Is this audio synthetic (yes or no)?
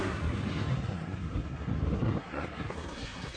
yes